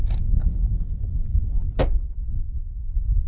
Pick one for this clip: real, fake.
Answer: real